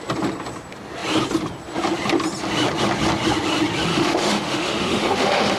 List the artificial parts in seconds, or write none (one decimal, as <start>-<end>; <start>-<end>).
3.9-5.6